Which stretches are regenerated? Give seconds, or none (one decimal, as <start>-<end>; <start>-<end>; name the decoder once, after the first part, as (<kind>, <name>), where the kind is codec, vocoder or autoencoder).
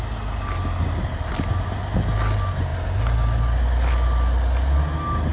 none